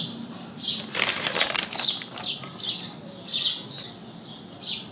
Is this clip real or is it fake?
real